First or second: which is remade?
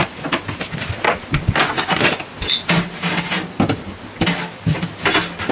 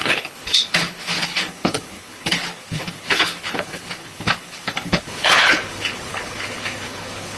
second